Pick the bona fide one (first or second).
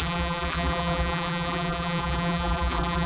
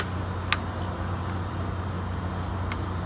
second